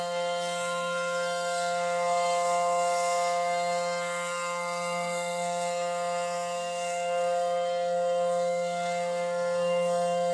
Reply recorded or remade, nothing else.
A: remade